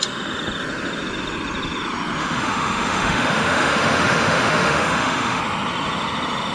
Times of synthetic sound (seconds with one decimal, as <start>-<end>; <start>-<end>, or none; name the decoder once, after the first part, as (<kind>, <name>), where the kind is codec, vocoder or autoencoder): 2.2-5.4 (autoencoder, DAC-VAE)